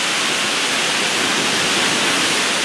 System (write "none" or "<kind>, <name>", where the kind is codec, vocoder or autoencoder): none